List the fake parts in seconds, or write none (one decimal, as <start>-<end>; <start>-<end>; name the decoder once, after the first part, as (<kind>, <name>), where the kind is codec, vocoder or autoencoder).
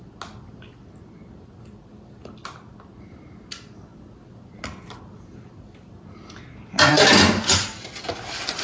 none